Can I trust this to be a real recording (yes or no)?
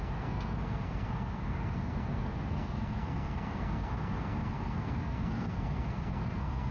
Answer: no